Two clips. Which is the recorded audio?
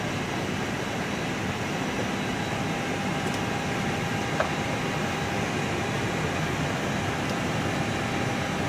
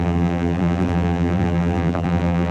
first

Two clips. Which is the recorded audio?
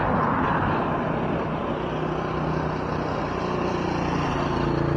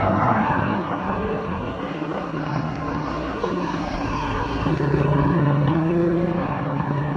first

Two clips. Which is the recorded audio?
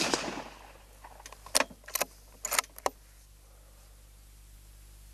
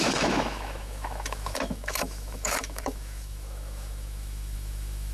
first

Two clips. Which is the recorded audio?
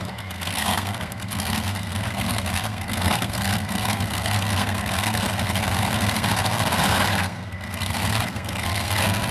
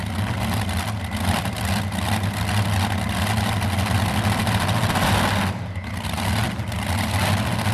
second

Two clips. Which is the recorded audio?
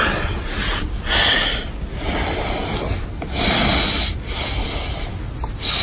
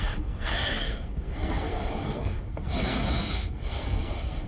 first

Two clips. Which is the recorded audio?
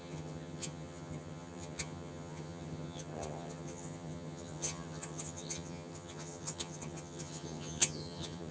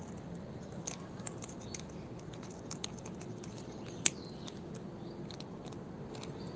second